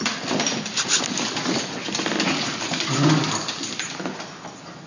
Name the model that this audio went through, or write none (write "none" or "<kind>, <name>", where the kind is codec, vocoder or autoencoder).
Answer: none